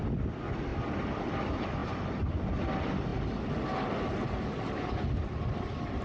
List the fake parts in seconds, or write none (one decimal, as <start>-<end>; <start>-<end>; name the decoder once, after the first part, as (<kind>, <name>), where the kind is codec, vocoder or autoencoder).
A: 1.8-2.5 (vocoder, BigVGAN v2)